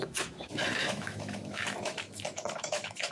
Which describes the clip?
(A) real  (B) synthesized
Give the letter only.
B